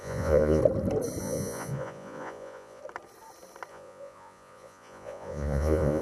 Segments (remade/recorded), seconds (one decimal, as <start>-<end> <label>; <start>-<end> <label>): 0.0-0.6 remade; 0.6-1.2 recorded; 1.2-2.8 remade; 2.8-3.7 recorded; 3.7-6.0 remade